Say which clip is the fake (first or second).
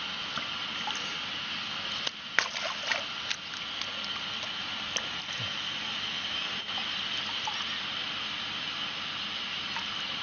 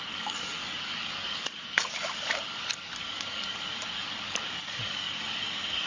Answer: second